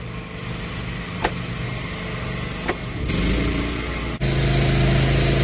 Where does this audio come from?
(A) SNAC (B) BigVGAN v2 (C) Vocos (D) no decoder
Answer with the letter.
D